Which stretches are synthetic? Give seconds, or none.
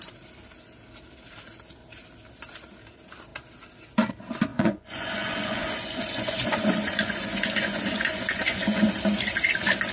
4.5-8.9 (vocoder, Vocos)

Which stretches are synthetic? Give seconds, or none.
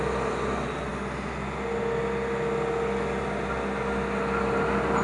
none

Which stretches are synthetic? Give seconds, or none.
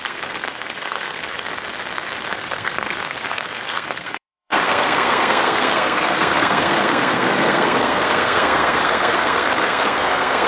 0.0-1.5 (codec, SNAC); 2.3-10.5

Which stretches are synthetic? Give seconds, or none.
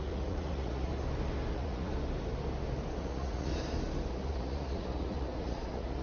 0.0-0.9 (vocoder, Vocos); 1.5-1.9; 3.0-3.5; 4.1-6.0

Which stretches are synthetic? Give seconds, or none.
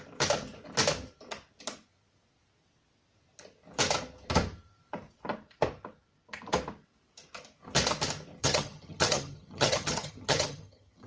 8.4-11.1 (vocoder, HiFi-GAN)